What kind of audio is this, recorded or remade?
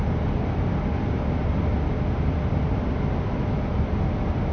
recorded